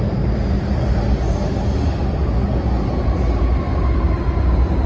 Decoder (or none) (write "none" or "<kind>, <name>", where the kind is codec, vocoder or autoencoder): none